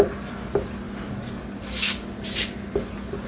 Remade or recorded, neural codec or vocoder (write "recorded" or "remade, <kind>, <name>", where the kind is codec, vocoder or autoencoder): recorded